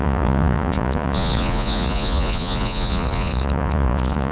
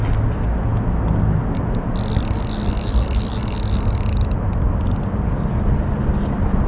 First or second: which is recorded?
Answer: second